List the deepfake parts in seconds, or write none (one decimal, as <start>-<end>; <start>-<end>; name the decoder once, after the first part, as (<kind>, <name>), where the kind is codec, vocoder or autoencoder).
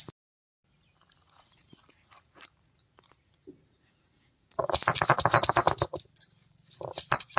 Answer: 1.2-4.6 (vocoder, Vocos)